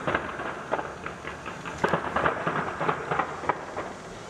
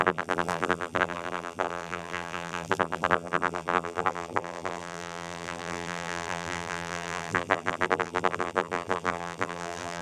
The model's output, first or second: second